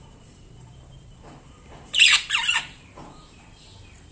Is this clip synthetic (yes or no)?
yes